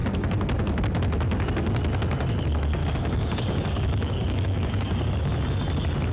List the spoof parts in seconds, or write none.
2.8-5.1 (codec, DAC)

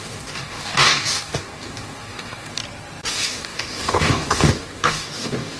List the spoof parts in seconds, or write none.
0.0-2.6 (codec, DAC); 3.1-5.6

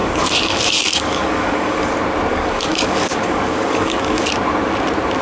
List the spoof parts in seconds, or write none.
0.0-1.9 (codec, DAC); 2.3-4.3